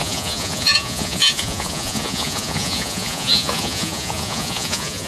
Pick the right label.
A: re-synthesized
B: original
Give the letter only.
A